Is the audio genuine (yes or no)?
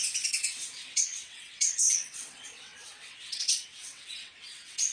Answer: no